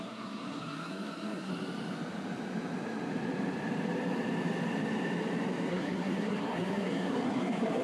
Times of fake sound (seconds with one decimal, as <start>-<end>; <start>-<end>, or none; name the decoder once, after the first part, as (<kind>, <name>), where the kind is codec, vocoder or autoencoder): 0.0-1.5 (codec, SNAC); 5.7-7.8